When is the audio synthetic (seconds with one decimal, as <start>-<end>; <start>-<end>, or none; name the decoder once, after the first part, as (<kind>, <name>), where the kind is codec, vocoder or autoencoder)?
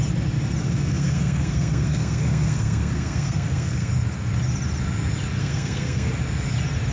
0.6-3.9 (codec, SNAC); 5.4-6.1